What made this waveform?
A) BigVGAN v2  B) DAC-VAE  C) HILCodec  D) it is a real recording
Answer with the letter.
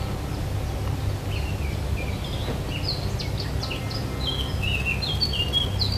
D